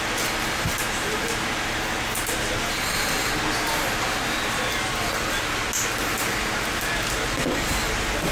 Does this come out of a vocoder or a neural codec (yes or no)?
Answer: no